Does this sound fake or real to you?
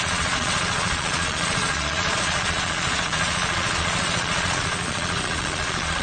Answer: fake